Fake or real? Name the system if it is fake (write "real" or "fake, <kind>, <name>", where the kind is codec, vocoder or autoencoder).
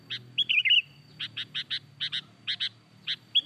real